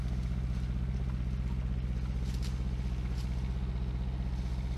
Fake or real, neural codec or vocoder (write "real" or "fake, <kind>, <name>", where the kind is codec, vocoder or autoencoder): real